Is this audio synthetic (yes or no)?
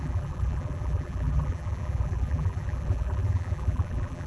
yes